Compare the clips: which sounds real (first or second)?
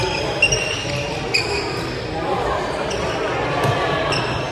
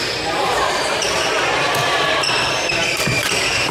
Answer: first